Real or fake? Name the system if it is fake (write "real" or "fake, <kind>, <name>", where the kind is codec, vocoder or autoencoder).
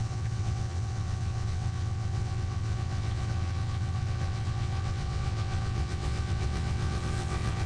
fake, vocoder, WaveNeXt